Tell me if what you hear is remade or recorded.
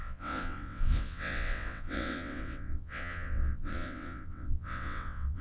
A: remade